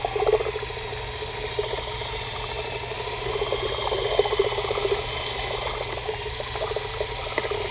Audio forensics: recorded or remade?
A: recorded